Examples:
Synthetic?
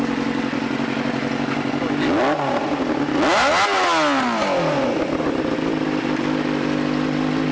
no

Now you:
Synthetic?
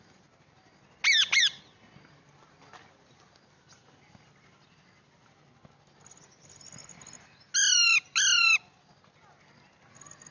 no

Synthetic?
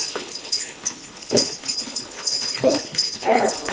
yes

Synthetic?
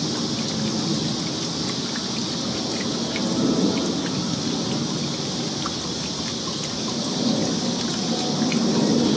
no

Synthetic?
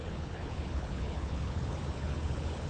yes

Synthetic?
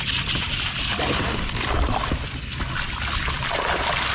no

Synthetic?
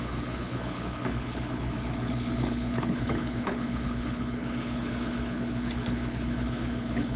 yes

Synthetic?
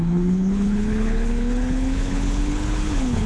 yes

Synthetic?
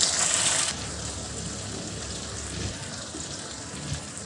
no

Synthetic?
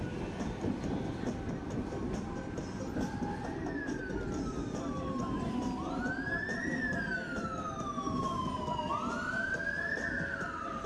no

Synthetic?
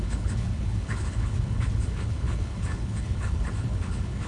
yes